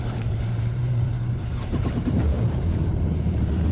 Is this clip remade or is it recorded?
remade